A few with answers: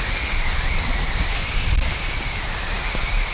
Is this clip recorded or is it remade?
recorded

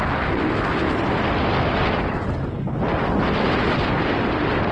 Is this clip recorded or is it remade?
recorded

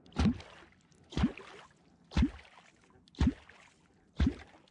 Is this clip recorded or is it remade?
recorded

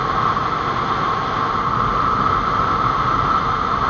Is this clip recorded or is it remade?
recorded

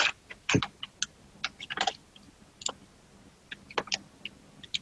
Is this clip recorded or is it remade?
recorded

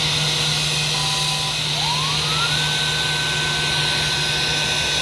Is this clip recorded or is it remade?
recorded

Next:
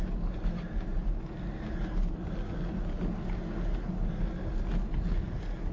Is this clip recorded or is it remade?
recorded